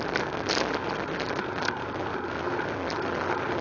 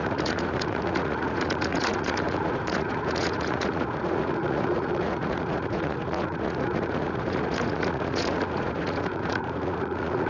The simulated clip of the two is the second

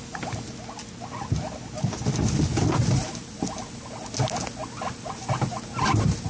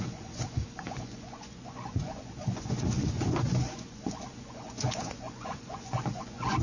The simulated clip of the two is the second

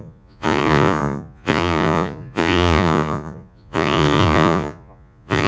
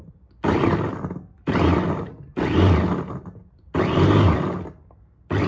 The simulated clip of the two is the first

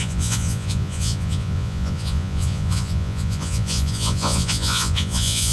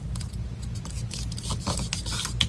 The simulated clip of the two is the first